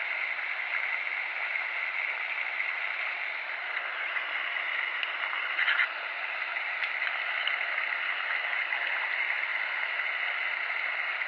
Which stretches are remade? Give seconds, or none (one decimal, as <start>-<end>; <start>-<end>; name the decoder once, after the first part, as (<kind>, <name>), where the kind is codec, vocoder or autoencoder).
none